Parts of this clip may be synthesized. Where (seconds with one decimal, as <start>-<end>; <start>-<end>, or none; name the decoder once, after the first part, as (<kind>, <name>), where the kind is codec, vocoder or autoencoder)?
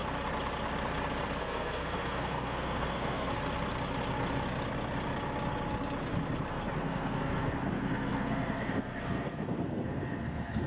1.4-3.3 (codec, SNAC); 6.5-10.7